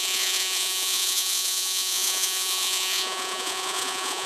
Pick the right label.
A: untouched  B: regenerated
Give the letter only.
B